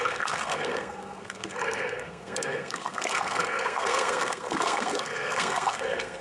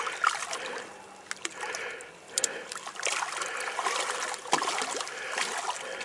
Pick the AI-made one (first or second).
first